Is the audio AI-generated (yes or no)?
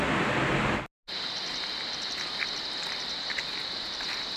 no